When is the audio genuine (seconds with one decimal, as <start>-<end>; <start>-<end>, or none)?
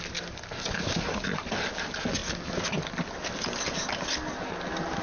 0.0-5.0